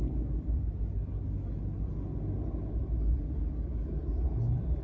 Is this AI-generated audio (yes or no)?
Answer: no